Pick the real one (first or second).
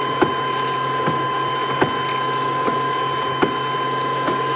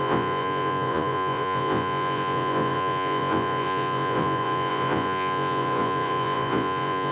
first